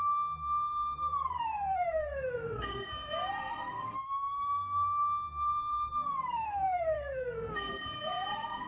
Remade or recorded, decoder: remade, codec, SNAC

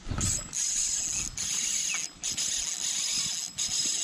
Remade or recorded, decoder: recorded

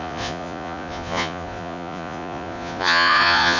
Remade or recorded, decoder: remade, vocoder, Vocos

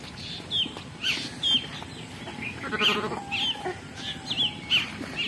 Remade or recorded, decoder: recorded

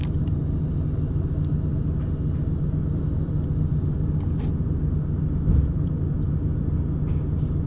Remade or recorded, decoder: recorded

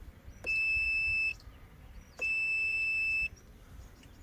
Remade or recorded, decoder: remade, vocoder, BigVGAN v2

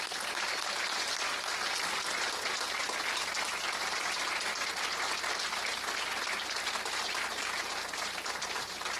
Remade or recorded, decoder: recorded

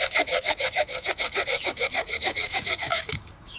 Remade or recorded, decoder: remade, codec, DAC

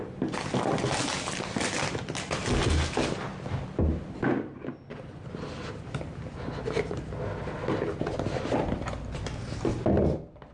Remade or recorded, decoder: recorded